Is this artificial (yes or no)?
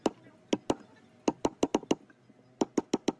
no